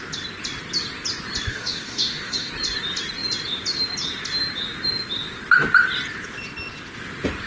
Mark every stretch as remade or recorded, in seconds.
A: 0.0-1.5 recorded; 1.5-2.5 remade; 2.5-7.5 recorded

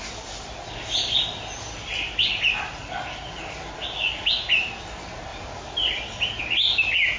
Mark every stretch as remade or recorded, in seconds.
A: 0.0-7.2 recorded

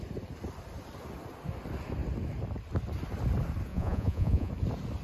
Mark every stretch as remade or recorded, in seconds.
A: 0.0-3.7 recorded; 3.7-4.5 remade; 4.5-5.0 recorded

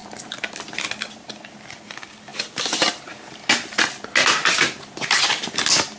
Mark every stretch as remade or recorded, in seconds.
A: 0.0-6.0 recorded

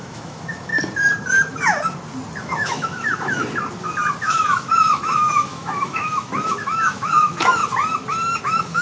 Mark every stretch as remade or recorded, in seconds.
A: 0.0-0.7 remade; 0.7-2.4 recorded; 2.4-3.4 remade; 3.4-4.2 recorded; 4.2-7.6 remade; 7.6-8.4 recorded; 8.4-8.8 remade

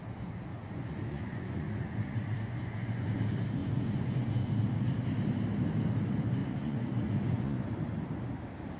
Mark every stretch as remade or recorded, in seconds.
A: 0.0-0.5 recorded; 0.5-3.2 remade; 3.2-3.6 recorded; 3.6-4.5 remade; 4.5-6.4 recorded; 6.4-7.7 remade; 7.7-8.8 recorded